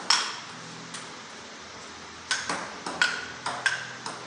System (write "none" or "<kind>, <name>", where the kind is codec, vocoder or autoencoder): none